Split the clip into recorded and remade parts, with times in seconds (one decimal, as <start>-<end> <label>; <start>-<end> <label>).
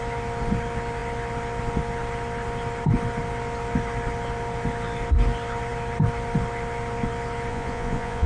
0.0-7.5 recorded; 7.5-8.3 remade